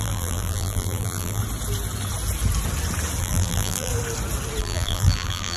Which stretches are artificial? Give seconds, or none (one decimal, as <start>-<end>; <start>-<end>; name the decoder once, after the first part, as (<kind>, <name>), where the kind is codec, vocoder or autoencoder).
0.0-1.4 (vocoder, BigVGAN v2); 3.2-3.9; 4.6-5.6